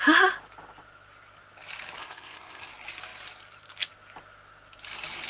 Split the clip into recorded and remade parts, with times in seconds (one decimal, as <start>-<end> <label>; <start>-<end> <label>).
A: 0.0-2.0 recorded; 2.0-2.7 remade; 2.7-5.3 recorded